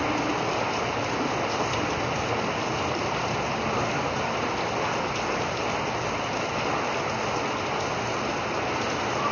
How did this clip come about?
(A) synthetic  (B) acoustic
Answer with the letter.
B